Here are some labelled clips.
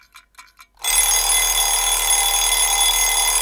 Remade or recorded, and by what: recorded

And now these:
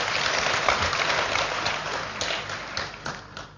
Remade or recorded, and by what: recorded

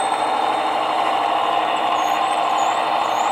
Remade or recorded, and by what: remade, vocoder, BigVGAN v2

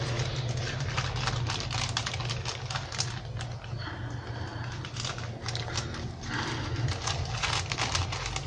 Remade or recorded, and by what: recorded